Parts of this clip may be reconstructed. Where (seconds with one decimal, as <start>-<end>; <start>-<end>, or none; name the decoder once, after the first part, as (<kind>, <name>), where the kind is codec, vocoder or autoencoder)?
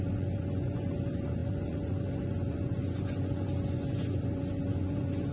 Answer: 0.0-5.3 (vocoder, Vocos)